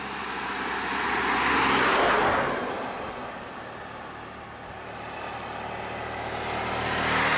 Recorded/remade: recorded